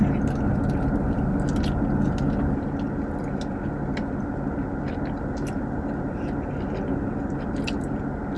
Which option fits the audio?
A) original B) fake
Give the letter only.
A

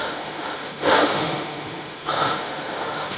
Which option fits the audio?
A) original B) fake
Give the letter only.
B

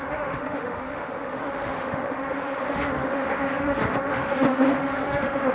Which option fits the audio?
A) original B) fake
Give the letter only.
B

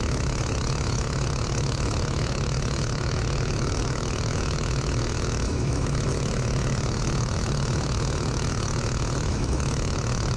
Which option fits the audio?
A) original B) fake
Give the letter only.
B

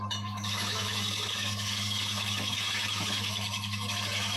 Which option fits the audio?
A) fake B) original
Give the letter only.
A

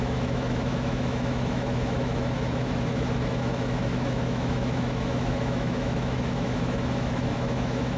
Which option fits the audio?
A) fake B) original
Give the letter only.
A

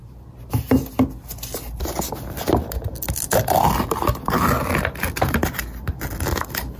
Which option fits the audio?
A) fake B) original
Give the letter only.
B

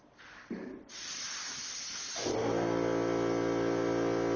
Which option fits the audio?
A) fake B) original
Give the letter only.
B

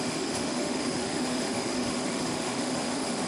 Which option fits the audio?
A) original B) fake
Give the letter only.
B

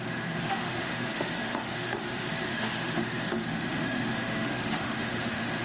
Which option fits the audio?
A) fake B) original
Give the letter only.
A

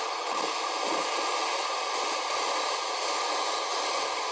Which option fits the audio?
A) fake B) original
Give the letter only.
B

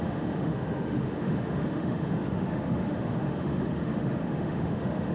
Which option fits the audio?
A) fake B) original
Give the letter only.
A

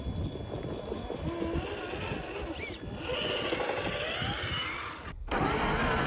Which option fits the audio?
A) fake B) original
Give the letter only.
B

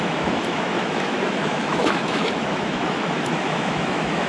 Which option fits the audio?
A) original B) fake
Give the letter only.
B